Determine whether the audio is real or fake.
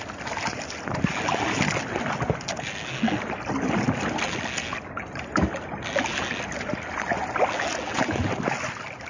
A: real